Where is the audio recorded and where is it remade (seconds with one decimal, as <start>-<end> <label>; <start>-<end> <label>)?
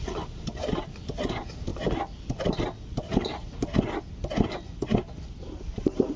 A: 0.0-6.2 recorded